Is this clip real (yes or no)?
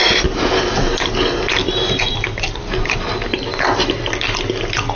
yes